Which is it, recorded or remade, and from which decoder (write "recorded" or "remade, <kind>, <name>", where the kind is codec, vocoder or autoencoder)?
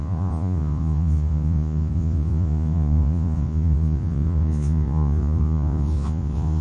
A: remade, vocoder, Vocos